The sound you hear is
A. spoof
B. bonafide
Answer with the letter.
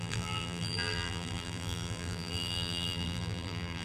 A